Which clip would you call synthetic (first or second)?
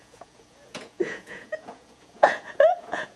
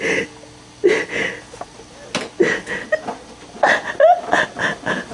first